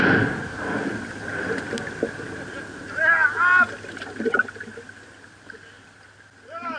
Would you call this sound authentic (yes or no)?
yes